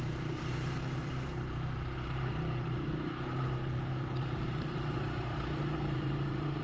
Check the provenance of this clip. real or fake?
fake